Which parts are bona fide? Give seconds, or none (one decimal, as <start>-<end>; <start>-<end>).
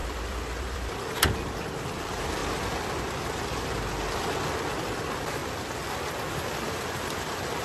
2.4-4.7; 5.4-6.3